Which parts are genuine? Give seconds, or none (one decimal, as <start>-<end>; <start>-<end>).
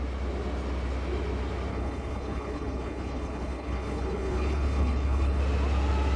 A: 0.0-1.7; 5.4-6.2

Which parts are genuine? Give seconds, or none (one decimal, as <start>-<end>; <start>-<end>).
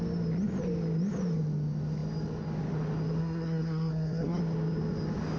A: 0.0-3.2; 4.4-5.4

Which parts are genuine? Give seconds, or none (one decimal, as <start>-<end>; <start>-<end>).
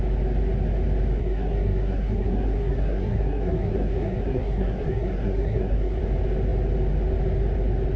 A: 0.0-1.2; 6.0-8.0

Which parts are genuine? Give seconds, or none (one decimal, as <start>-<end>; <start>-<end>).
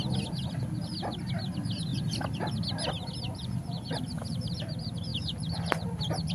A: 0.0-3.4; 4.5-5.1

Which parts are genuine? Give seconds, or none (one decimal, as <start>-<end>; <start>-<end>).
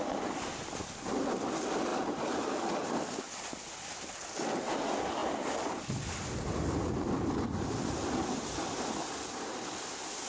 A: 0.0-10.3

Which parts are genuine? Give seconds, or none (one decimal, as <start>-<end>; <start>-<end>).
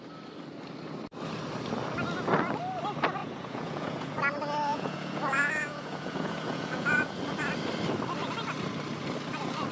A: 0.0-3.2; 4.2-4.7; 7.2-9.7